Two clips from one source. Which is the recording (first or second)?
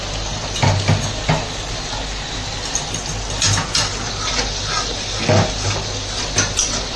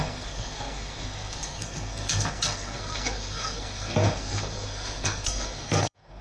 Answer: first